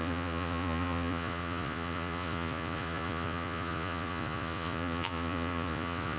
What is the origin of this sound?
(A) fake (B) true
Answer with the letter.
A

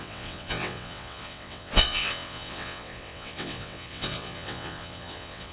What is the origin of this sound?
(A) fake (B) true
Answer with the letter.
A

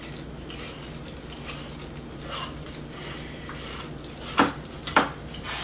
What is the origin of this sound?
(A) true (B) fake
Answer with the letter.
A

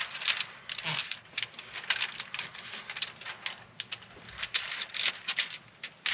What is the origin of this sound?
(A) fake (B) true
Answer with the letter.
B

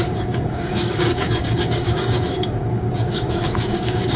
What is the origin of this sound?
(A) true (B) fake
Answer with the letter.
B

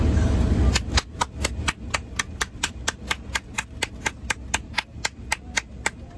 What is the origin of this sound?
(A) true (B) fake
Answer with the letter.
A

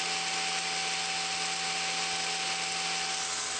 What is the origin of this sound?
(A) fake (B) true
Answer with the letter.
B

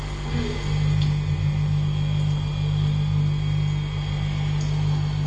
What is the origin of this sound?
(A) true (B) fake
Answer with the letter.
A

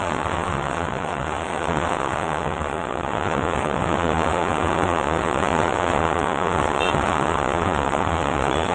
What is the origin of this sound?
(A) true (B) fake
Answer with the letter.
B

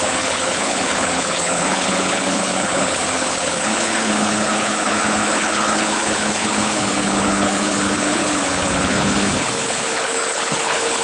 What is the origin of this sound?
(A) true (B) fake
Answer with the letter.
B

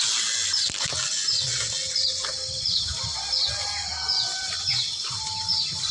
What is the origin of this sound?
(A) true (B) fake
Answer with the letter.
A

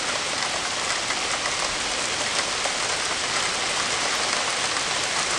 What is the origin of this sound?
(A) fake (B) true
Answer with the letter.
B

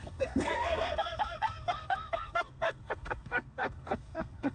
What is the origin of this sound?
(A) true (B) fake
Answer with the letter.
B